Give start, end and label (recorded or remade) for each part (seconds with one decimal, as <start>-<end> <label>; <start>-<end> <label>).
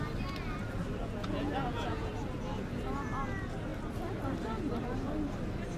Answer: 0.0-1.0 recorded; 1.0-2.1 remade; 2.1-5.8 recorded